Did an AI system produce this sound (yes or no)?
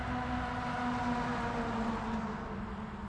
no